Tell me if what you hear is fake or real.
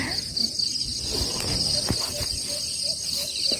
real